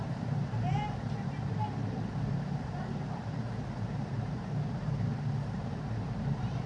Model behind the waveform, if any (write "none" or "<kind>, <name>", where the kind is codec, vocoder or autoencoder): vocoder, BigVGAN v2